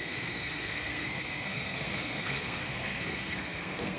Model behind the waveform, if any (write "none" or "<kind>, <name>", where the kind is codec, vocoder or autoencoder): codec, SNAC